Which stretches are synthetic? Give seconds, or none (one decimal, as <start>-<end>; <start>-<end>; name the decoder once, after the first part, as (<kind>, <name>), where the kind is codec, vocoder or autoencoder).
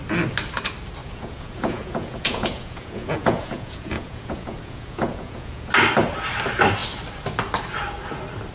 1.0-5.7 (vocoder, Vocos)